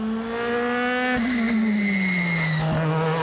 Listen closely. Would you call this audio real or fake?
real